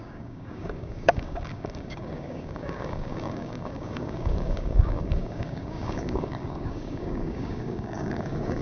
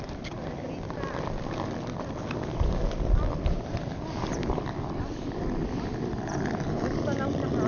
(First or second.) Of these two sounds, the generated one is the first